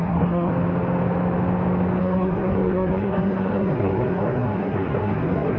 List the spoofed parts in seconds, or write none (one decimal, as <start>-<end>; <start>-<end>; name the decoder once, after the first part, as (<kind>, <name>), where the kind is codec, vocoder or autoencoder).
0.0-0.5 (codec, SNAC); 2.0-5.6

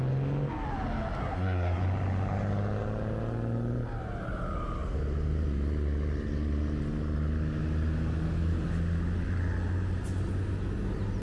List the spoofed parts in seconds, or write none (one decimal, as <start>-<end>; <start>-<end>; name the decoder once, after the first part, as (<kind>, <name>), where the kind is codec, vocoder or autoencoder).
1.2-1.8 (codec, SNAC)

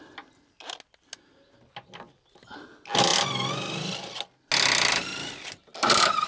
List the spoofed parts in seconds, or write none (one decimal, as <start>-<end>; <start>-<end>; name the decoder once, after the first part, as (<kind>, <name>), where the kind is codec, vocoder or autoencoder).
none

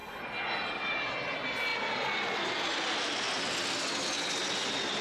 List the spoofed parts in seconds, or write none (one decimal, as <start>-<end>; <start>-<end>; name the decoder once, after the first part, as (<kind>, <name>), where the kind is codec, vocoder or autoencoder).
none

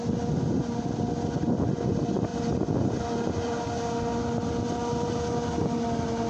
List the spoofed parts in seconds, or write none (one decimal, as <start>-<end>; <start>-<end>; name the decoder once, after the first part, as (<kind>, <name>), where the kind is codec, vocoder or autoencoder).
none